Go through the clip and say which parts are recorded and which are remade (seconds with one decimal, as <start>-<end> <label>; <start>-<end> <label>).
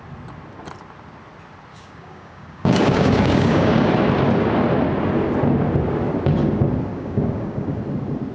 0.0-1.7 recorded; 1.7-3.9 remade; 3.9-6.9 recorded; 6.9-7.8 remade; 7.8-8.3 recorded